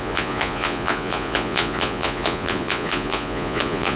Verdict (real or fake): fake